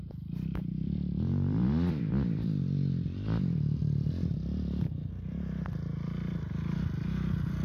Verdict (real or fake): fake